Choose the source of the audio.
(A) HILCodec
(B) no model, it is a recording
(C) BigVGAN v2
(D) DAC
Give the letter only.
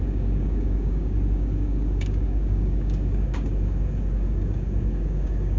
D